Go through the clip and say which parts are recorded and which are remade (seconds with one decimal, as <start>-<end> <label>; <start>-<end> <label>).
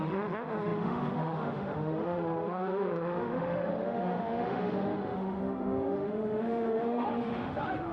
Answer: 0.0-7.9 remade